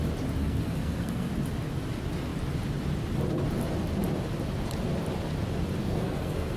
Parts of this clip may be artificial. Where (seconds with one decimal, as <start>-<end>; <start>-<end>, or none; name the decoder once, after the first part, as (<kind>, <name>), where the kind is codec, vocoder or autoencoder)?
0.4-1.3 (codec, SNAC); 5.8-6.6